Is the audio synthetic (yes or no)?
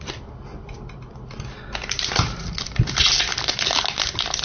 no